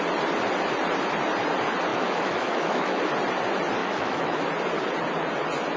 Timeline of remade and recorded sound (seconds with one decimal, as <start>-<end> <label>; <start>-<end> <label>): 0.0-1.9 recorded; 1.9-3.0 remade; 3.0-3.8 recorded; 3.8-4.4 remade; 4.4-5.8 recorded